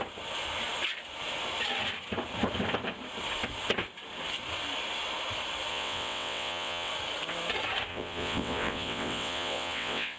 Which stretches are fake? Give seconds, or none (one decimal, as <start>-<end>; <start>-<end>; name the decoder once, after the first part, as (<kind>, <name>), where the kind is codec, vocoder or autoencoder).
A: 5.7-6.9 (vocoder, WaveNeXt); 7.9-10.2